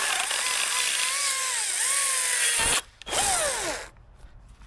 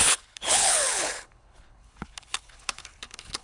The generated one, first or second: second